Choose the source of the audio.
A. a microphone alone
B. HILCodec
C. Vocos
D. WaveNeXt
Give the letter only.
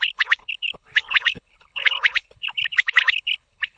B